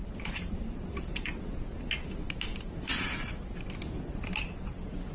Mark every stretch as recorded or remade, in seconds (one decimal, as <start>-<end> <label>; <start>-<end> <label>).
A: 0.0-1.5 remade; 1.5-5.1 recorded